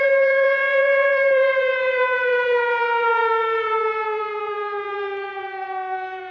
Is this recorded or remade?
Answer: remade